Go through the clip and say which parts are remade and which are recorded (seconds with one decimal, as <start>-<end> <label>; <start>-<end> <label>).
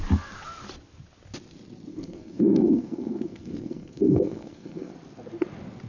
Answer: 0.0-1.9 recorded; 1.9-4.9 remade; 4.9-5.9 recorded